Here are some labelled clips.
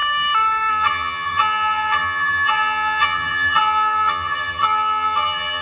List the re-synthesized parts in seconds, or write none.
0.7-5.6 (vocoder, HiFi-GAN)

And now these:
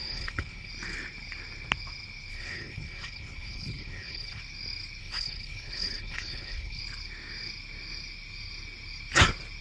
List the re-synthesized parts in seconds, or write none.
0.0-0.7 (codec, HILCodec); 2.3-4.4; 5.0-6.8

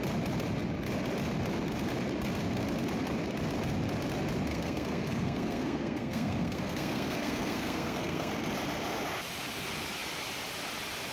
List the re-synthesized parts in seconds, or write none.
4.5-8.3 (codec, SNAC)